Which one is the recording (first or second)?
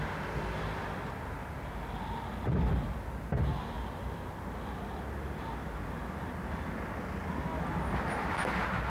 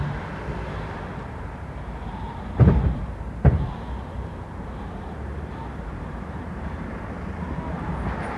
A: first